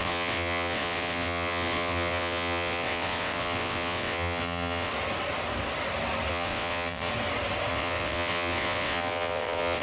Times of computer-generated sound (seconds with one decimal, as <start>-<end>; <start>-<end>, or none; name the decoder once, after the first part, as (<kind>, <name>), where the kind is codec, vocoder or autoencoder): 0.0-4.9 (vocoder, WaveNeXt); 6.3-7.1; 7.7-9.8